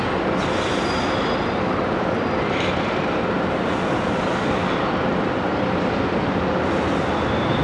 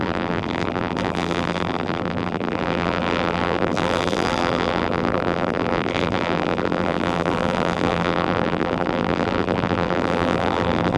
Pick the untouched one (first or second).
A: first